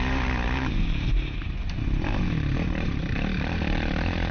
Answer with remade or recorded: remade